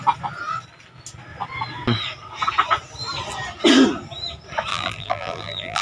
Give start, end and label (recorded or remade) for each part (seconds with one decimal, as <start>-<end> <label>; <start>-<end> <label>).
0.0-4.7 recorded; 4.7-5.8 remade